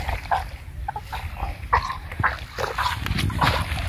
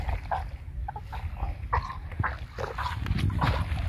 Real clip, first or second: second